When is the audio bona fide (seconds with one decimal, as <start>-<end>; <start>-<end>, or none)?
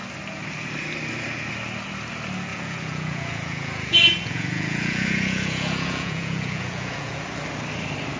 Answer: 0.0-2.5; 7.2-8.2